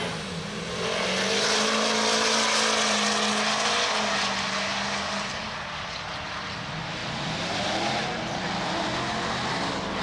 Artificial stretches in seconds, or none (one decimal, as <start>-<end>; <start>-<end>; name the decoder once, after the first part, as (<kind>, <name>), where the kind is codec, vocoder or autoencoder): 7.0-7.9 (vocoder, BigVGAN v2)